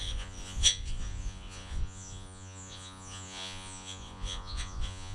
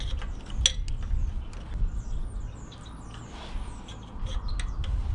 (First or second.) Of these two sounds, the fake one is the first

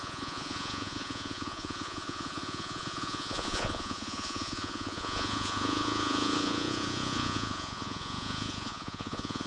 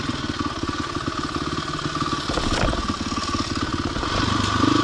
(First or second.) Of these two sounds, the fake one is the first